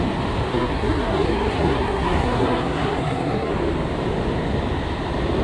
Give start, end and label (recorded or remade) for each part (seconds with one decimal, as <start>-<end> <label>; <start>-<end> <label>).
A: 0.0-0.5 recorded; 0.5-3.5 remade; 3.5-5.4 recorded